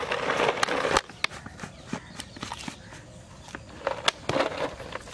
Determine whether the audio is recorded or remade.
recorded